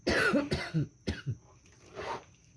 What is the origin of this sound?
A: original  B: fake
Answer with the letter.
A